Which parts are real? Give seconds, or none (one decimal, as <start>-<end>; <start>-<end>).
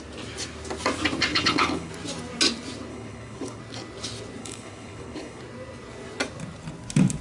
0.0-1.3; 1.9-2.9; 3.6-4.4; 5.4-7.2